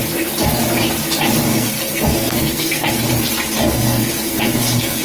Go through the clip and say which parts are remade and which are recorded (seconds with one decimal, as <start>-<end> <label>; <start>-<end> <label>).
0.0-1.5 recorded; 1.5-3.1 remade; 3.1-3.6 recorded; 3.6-5.0 remade